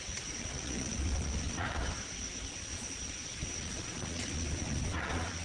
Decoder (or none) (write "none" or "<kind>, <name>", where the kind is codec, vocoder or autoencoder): vocoder, Vocos